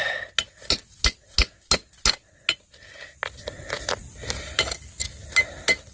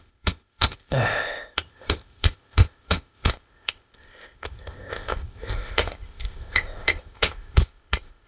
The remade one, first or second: second